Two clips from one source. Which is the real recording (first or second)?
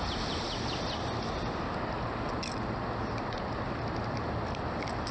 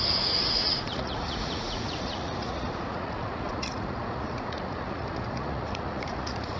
first